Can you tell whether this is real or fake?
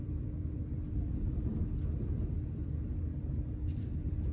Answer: real